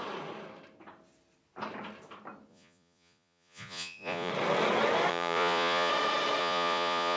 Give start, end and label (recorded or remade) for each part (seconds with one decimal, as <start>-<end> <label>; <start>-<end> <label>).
0.0-2.5 recorded; 2.5-4.3 remade; 4.3-5.1 recorded; 5.1-5.9 remade; 5.9-6.4 recorded; 6.4-7.2 remade